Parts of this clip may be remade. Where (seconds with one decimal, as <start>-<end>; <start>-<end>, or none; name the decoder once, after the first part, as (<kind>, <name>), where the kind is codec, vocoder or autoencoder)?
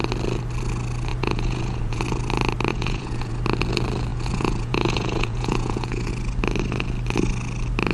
1.1-2.0 (vocoder, Vocos); 2.7-3.3; 4.1-6.1